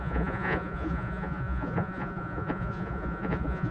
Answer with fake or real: fake